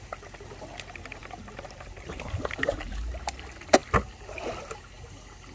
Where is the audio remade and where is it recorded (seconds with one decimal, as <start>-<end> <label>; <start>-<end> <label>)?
0.0-5.5 recorded